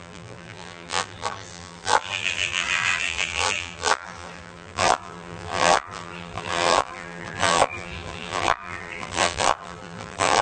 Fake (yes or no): yes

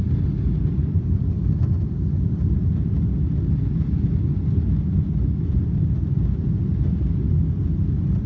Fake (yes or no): no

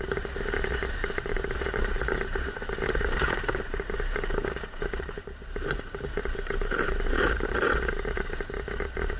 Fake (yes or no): yes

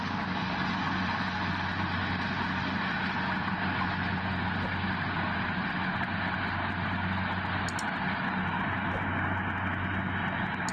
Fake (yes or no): no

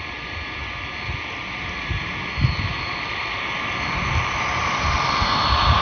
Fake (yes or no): yes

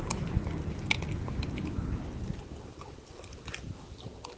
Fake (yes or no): no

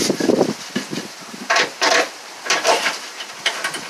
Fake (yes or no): yes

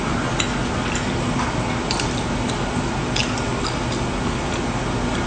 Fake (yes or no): no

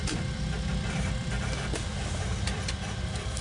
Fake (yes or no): yes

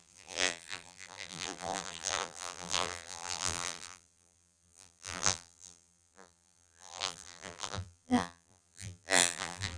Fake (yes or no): yes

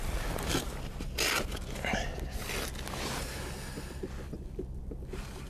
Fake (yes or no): no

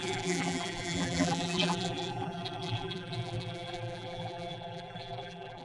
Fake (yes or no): yes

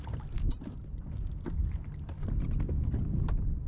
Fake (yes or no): no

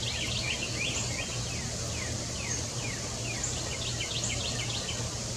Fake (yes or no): yes